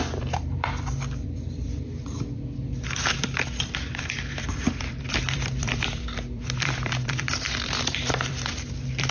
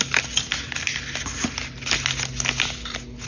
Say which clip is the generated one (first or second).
first